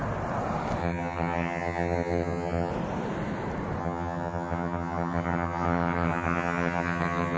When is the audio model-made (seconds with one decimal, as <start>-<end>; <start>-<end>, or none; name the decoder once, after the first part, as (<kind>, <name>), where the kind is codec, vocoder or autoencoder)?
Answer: 0.8-2.7 (vocoder, HiFi-GAN); 3.8-7.4